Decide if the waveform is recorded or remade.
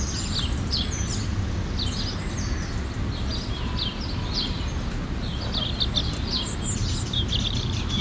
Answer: recorded